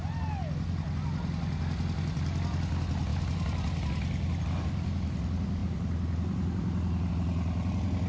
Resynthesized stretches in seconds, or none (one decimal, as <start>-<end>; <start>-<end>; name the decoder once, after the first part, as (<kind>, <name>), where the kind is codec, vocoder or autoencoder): none